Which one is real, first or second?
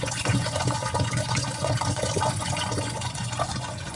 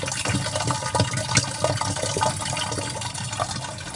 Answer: second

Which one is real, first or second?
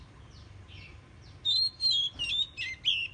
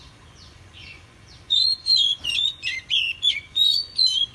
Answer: first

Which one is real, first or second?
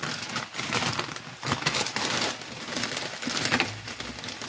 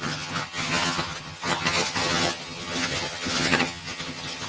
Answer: first